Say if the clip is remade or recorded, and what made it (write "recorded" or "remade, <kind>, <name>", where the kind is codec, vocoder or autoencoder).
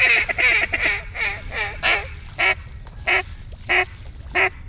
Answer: recorded